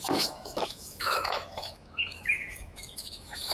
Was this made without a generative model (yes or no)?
no